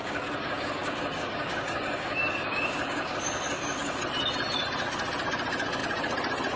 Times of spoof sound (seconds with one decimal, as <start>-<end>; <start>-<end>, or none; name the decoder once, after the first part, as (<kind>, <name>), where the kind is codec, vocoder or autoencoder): 0.0-4.0 (codec, DAC)